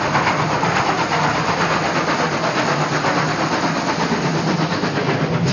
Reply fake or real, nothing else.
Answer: real